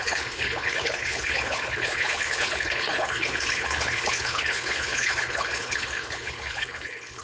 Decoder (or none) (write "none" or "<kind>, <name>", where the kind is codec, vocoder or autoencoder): codec, HILCodec